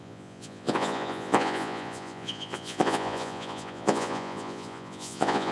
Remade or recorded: remade